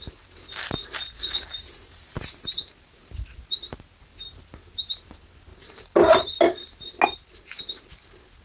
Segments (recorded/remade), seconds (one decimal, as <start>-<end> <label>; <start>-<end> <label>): 0.0-8.4 recorded